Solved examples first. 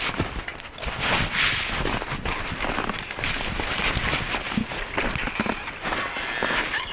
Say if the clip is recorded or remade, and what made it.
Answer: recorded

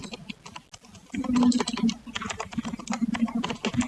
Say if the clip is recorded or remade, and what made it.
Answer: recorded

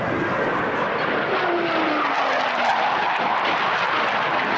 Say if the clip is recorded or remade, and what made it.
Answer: recorded